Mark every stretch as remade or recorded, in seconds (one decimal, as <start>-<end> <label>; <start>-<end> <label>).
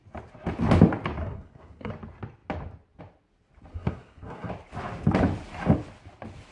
0.0-1.2 recorded; 1.2-1.9 remade; 1.9-3.7 recorded; 3.7-4.5 remade; 4.5-6.5 recorded